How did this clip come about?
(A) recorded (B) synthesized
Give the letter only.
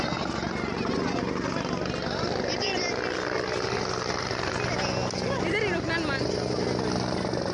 A